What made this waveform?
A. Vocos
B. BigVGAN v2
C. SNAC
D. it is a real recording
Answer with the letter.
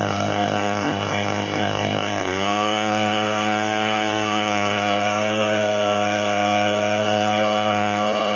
C